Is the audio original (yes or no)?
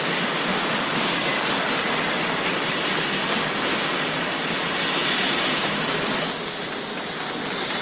yes